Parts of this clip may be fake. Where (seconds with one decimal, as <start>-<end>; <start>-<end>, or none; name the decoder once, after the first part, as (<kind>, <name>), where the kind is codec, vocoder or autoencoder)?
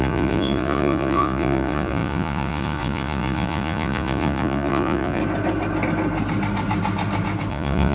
0.0-5.2 (vocoder, Vocos); 7.5-7.9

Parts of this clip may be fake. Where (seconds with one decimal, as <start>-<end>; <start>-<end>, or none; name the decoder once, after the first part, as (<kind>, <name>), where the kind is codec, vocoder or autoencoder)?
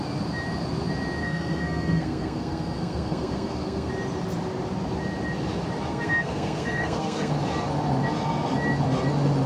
1.2-3.9 (codec, SNAC); 5.9-7.3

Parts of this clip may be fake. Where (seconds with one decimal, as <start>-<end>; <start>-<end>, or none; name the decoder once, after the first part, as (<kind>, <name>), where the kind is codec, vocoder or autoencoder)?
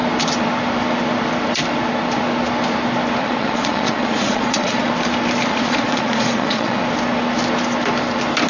3.2-4.9 (vocoder, Vocos); 5.5-6.8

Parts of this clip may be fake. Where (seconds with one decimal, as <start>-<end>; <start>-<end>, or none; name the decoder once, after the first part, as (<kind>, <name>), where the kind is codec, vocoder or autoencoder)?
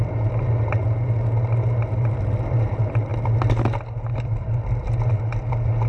none